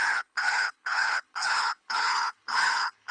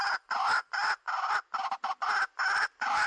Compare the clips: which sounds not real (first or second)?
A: first